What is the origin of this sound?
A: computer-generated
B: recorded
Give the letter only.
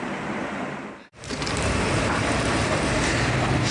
A